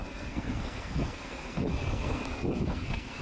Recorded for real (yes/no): no